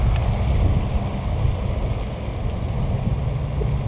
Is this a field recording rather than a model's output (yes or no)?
yes